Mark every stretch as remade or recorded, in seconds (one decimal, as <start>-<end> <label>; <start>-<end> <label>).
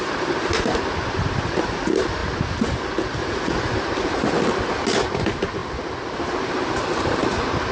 0.0-3.2 recorded; 3.2-3.7 remade; 3.7-7.7 recorded